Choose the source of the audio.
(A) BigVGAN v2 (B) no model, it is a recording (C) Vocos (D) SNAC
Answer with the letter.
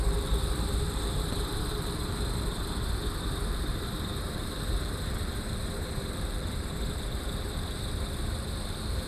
A